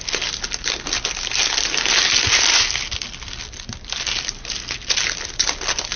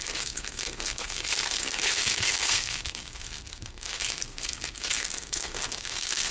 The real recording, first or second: first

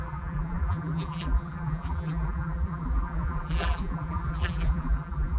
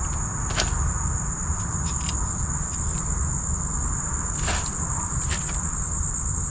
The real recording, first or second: second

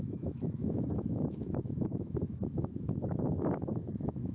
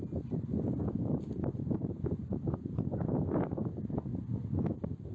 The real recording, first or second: second